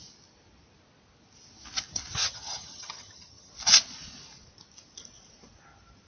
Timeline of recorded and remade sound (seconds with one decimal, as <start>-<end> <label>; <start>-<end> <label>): 0.0-2.2 recorded; 2.2-3.5 remade; 3.5-6.1 recorded